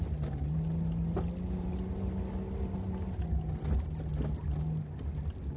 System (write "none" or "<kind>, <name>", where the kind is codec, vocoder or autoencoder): none